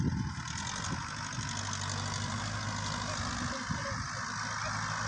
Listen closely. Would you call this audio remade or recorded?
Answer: recorded